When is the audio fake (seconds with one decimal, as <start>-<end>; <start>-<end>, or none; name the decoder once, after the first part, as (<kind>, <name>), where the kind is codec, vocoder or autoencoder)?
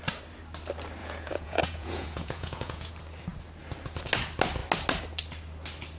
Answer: 1.0-2.9 (vocoder, Vocos)